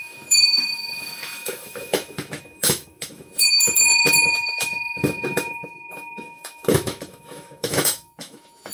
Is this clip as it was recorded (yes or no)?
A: no